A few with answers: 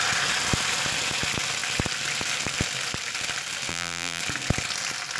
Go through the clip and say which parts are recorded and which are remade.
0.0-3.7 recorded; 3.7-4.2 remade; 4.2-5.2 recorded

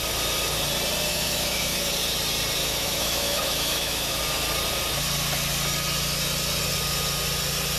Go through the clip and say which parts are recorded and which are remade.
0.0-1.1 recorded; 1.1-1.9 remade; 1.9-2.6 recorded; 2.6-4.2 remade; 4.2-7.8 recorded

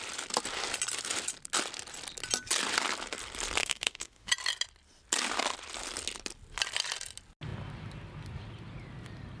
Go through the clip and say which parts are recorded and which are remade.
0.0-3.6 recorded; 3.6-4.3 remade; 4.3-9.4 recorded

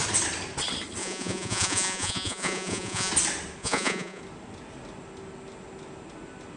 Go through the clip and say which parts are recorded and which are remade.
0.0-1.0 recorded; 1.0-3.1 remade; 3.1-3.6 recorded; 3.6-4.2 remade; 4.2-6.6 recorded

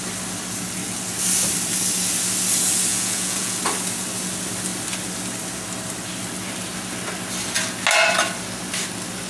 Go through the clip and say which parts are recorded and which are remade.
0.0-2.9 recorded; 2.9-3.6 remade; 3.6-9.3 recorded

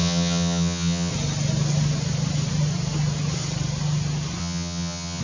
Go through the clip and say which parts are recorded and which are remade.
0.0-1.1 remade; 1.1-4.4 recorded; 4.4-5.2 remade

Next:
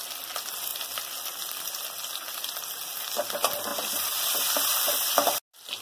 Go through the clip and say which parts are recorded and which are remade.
0.0-5.8 recorded

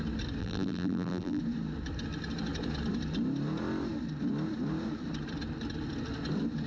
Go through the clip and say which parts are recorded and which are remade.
0.0-0.4 recorded; 0.4-1.4 remade; 1.4-6.7 recorded